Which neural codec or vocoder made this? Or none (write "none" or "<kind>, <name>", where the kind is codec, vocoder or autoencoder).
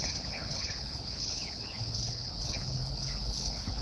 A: codec, HILCodec